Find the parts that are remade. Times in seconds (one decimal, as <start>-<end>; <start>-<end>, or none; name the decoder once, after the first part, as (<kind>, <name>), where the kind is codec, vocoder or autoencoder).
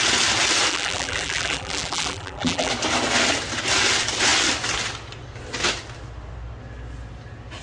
0.7-2.7 (vocoder, BigVGAN v2)